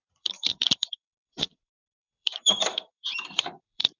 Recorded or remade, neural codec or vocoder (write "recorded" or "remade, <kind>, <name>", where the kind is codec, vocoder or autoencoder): remade, vocoder, BigVGAN v2